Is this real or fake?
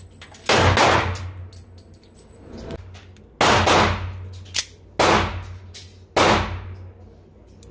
real